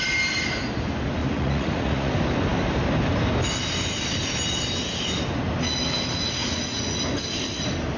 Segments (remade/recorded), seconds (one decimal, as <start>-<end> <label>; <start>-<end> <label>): 0.0-1.2 recorded; 1.2-2.1 remade; 2.1-6.4 recorded; 6.4-7.0 remade; 7.0-8.0 recorded